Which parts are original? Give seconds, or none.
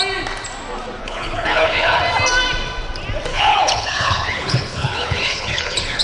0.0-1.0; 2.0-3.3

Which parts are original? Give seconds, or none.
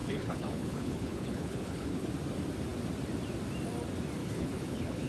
2.1-4.2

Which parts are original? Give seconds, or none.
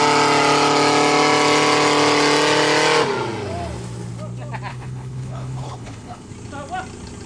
0.0-4.7; 6.3-7.3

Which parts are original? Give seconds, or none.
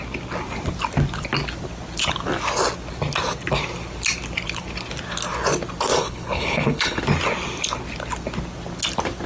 0.0-5.9; 7.0-9.3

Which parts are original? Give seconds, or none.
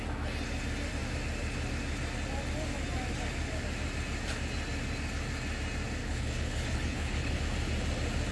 0.0-6.0; 7.4-8.3